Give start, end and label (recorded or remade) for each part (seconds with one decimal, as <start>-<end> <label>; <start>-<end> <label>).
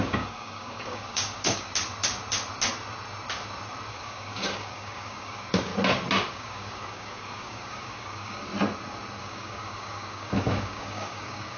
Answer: 0.0-1.7 remade; 1.7-3.9 recorded; 3.9-5.7 remade; 5.7-6.3 recorded; 6.3-8.5 remade; 8.5-9.2 recorded; 9.2-11.6 remade